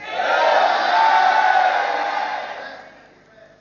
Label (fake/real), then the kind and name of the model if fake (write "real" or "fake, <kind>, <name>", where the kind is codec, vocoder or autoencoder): real